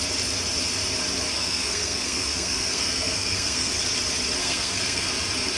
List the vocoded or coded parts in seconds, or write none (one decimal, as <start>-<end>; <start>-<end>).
1.3-3.7; 4.4-5.1